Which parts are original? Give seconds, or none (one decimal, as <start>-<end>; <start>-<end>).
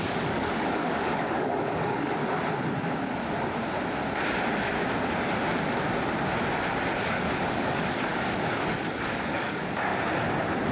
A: 2.2-6.9; 9.9-10.7